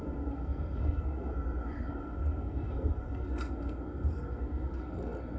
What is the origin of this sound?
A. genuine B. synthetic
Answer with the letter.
B